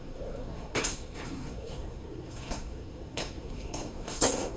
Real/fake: fake